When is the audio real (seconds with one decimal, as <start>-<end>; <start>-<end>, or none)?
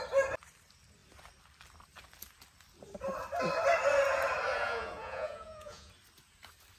0.0-4.5; 5.9-6.8